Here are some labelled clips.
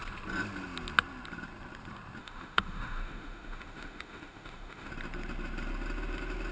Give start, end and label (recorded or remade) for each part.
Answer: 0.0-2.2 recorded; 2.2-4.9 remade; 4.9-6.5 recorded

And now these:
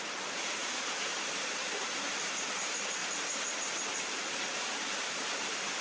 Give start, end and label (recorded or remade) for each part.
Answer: 0.0-3.0 remade; 3.0-4.1 recorded; 4.1-5.8 remade

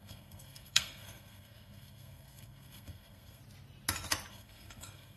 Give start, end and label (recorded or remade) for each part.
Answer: 0.0-3.4 remade; 3.4-4.3 recorded; 4.3-5.2 remade

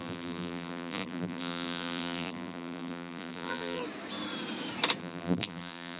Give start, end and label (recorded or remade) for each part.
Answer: 0.0-3.8 remade; 3.8-5.0 recorded; 5.0-6.0 remade

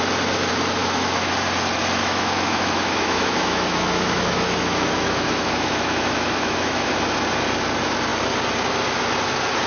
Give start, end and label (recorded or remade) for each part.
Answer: 0.0-0.8 recorded; 0.8-1.3 remade; 1.3-2.0 recorded; 2.0-6.9 remade; 6.9-9.7 recorded

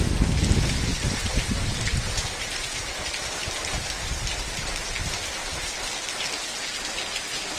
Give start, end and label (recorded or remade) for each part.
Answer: 0.0-0.9 recorded; 0.9-4.9 remade; 4.9-7.6 recorded

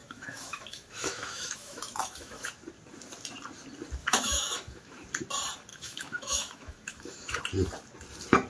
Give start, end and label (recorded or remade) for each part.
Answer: 0.0-2.5 remade; 2.5-4.0 recorded; 4.0-4.9 remade; 4.9-5.7 recorded; 5.7-7.4 remade; 7.4-8.5 recorded